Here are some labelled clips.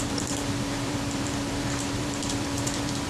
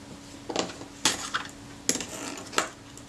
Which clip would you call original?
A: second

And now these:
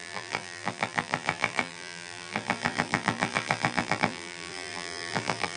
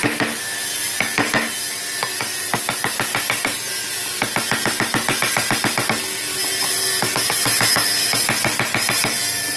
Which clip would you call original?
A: second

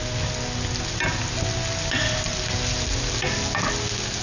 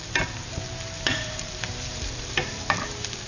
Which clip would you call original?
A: first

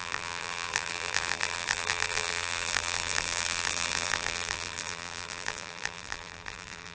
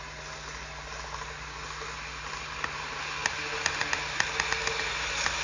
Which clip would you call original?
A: second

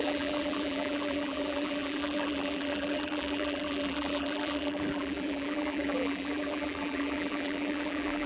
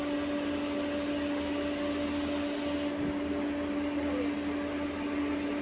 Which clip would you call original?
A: second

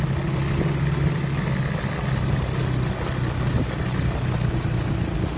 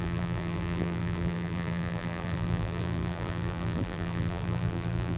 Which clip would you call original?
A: first